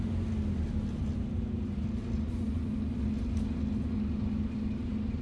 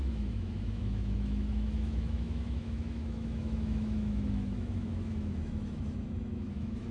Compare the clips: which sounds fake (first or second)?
second